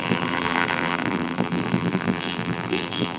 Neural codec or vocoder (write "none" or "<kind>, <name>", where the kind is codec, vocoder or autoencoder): vocoder, BigVGAN v2